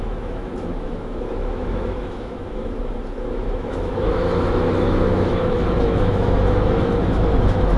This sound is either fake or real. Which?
fake